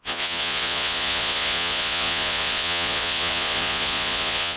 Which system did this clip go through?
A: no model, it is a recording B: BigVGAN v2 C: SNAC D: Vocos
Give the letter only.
D